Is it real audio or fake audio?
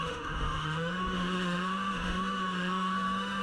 fake